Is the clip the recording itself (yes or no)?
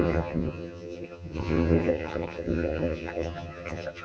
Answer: no